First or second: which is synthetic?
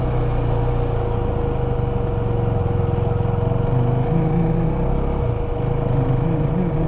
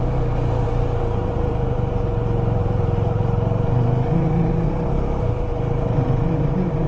second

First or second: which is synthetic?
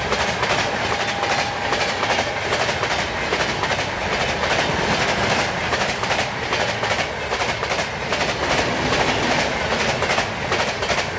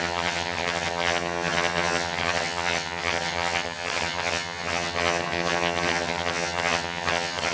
second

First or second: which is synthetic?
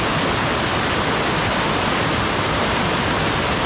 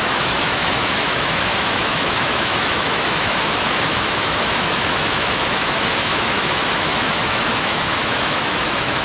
second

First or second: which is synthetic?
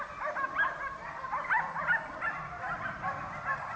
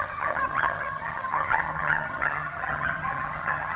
second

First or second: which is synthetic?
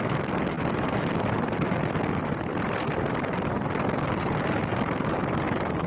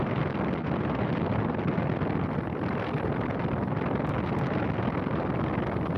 first